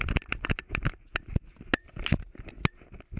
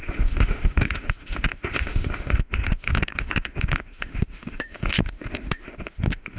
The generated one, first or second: second